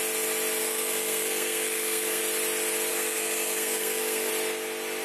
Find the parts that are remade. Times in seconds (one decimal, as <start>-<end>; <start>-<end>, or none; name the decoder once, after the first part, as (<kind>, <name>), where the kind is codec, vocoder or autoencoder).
0.6-2.2 (codec, SNAC); 2.9-4.3